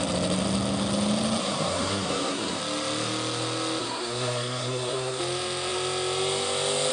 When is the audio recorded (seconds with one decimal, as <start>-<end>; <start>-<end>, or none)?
0.0-1.4; 2.6-3.8; 5.2-6.9